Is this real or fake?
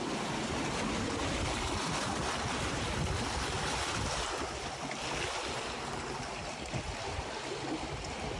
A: real